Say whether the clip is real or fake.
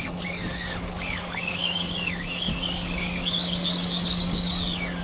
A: fake